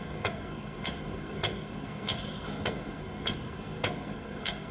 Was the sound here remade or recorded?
remade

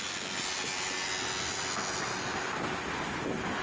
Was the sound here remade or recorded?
recorded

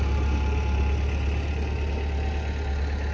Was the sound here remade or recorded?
recorded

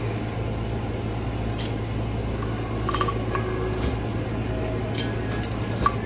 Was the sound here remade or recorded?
recorded